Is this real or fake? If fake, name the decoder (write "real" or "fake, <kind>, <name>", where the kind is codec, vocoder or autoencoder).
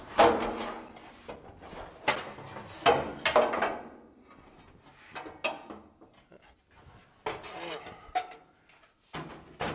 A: real